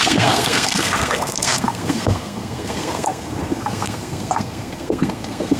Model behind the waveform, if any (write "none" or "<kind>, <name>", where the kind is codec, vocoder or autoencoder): codec, SNAC